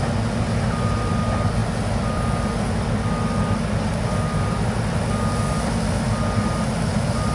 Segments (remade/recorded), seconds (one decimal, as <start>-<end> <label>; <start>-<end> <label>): 0.0-7.3 recorded